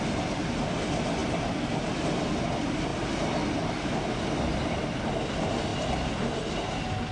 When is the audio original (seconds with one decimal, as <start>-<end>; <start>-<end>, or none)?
0.0-7.1